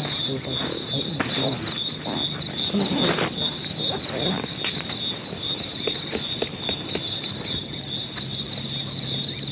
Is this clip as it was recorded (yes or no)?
yes